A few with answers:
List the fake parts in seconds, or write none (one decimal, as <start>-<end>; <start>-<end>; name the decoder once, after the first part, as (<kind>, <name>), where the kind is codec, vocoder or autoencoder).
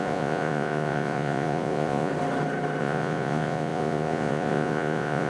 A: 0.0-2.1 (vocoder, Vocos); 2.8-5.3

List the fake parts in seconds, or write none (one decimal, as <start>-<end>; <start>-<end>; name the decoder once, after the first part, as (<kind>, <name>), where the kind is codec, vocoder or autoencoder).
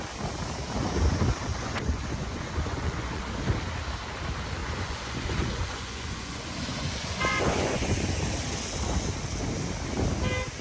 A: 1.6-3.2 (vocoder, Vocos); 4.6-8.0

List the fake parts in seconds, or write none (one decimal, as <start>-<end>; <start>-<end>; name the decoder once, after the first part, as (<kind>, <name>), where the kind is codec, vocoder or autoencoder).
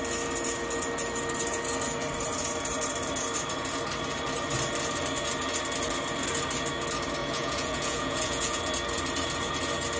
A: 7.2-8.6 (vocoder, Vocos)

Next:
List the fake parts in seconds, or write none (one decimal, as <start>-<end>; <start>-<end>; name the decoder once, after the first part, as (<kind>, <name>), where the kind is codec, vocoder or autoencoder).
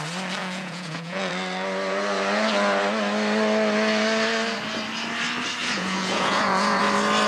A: 0.4-1.3 (vocoder, Vocos); 5.6-6.8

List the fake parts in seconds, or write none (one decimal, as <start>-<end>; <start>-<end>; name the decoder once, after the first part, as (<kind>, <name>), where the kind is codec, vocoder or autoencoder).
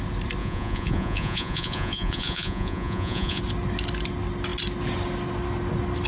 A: 0.4-3.4 (vocoder, Vocos)